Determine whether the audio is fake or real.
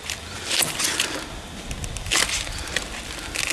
real